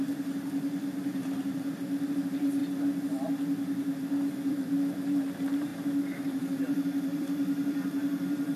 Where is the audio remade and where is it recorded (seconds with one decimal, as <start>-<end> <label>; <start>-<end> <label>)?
0.0-2.6 remade; 2.6-4.5 recorded; 4.5-8.6 remade